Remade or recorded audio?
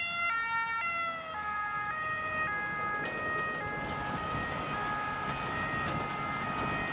recorded